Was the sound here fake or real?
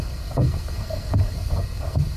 fake